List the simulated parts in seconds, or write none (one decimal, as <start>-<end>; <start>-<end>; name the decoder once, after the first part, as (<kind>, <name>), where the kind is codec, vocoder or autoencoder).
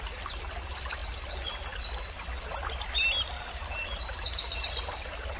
none